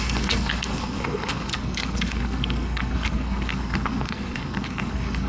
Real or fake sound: fake